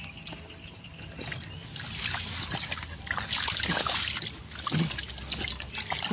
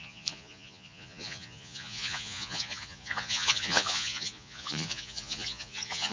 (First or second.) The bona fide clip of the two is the first